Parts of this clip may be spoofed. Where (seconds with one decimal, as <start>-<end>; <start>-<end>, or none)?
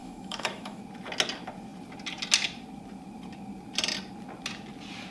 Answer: 0.0-0.8